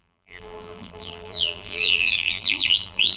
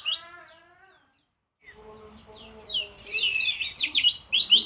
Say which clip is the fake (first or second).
first